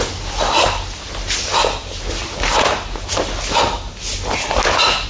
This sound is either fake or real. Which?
real